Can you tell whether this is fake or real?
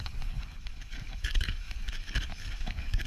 fake